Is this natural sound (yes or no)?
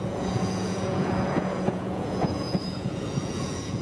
no